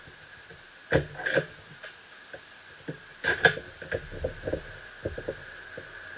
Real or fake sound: real